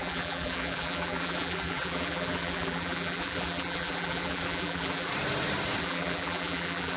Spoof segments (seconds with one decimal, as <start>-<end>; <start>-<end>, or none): 0.0-5.1; 5.8-7.0